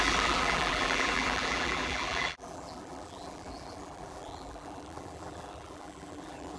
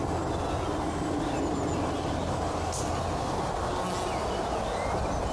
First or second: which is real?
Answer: second